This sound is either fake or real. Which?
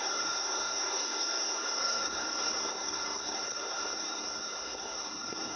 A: fake